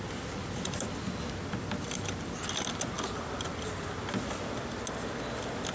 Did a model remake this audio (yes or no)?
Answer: no